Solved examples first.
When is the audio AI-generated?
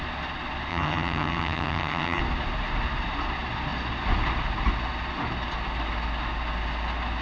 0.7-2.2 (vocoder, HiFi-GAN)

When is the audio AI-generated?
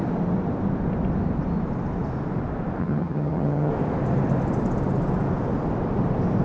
2.8-3.7 (vocoder, HiFi-GAN)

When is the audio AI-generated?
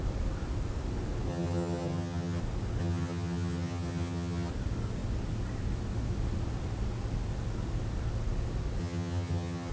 1.3-2.4 (vocoder, HiFi-GAN); 2.8-4.5; 8.8-9.7